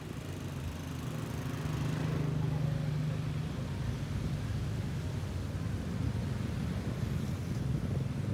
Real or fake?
real